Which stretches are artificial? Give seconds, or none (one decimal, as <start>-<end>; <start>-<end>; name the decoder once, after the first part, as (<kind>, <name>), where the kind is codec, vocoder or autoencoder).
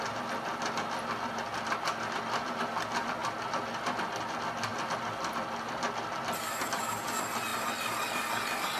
none